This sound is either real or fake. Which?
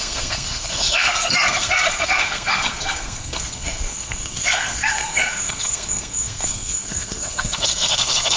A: fake